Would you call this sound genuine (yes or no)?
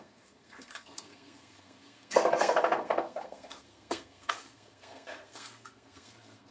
no